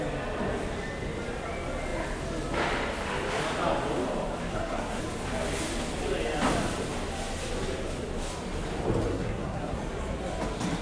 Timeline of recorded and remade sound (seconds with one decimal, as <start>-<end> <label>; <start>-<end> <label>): 0.0-4.5 recorded; 4.5-5.0 remade; 5.0-9.1 recorded; 9.1-9.8 remade; 9.8-10.8 recorded